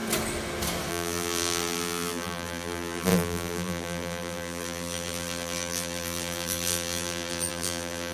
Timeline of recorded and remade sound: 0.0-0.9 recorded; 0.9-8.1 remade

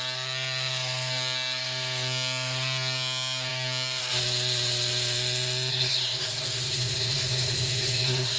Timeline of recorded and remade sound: 0.0-5.7 recorded; 5.7-8.4 remade

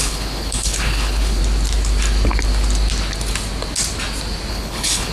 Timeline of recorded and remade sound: 0.0-1.4 remade; 1.4-4.5 recorded; 4.5-5.1 remade

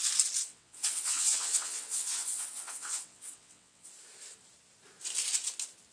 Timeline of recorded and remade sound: 0.0-0.4 recorded; 0.4-3.9 remade; 3.9-5.9 recorded